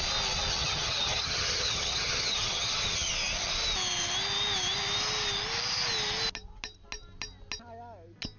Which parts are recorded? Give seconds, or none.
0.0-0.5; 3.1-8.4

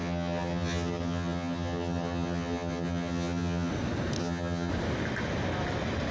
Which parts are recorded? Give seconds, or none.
3.7-4.2; 4.7-6.1

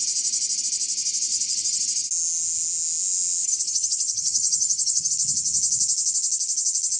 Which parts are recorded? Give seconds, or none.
0.0-1.3; 1.8-3.4; 5.1-7.0

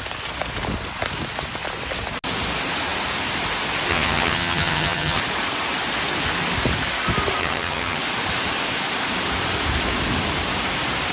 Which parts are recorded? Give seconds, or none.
0.0-3.9; 5.2-7.4; 8.0-11.1

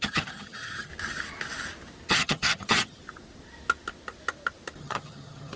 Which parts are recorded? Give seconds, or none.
0.9-2.1; 3.0-4.8

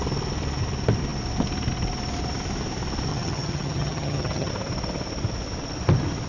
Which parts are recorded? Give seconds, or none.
0.0-3.1; 4.5-6.3

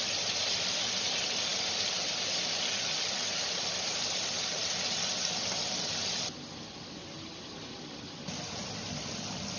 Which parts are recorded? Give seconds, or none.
0.0-9.6

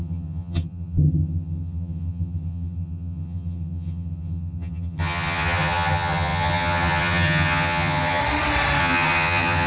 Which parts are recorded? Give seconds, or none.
8.2-8.8